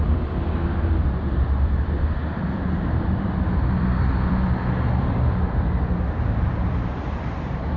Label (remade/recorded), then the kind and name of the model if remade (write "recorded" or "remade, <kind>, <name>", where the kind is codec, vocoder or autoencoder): remade, vocoder, BigVGAN v2